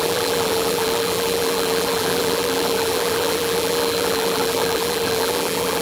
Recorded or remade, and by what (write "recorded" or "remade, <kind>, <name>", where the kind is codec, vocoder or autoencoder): remade, vocoder, BigVGAN v2